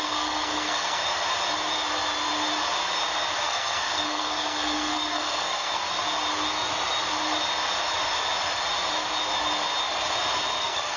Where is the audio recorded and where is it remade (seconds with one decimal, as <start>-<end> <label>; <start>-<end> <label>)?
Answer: 0.0-1.0 remade; 1.0-3.4 recorded; 3.4-5.8 remade; 5.8-10.6 recorded; 10.6-11.0 remade